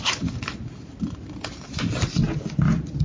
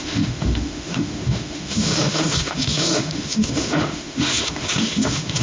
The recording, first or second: first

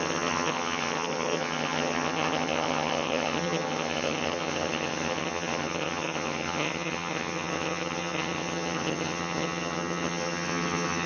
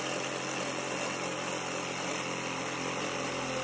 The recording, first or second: second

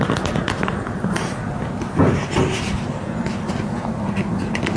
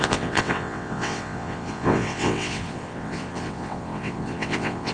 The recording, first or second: first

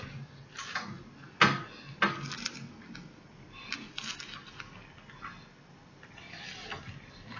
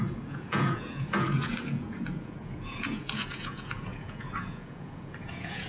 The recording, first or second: first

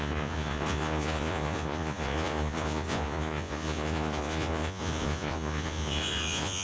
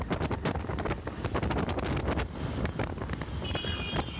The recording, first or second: second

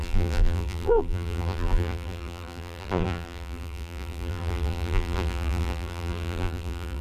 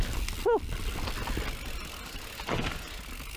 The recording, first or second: second